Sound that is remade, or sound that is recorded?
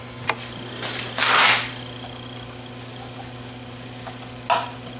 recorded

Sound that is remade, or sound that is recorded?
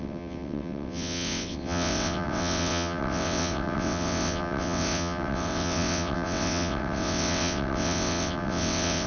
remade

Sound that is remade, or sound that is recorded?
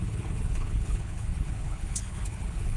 remade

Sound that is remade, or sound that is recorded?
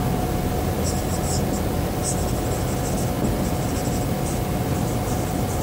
recorded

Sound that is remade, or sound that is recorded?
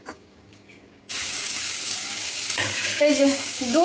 remade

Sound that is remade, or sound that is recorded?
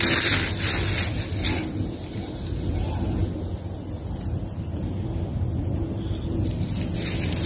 recorded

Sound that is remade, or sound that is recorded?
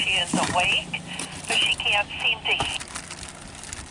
recorded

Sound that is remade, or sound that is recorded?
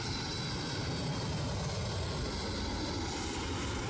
recorded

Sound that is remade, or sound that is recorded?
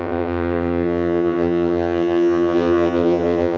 remade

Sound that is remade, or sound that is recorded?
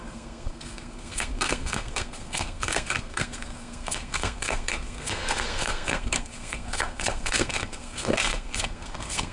remade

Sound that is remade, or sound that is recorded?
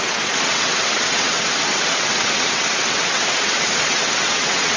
remade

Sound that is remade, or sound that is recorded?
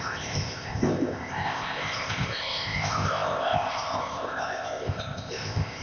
remade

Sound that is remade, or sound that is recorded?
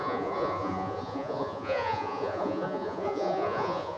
remade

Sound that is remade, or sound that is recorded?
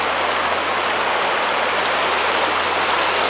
recorded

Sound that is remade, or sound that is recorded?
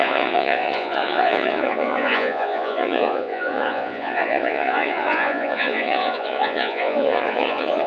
remade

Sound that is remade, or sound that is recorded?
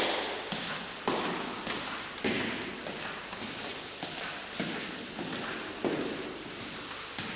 recorded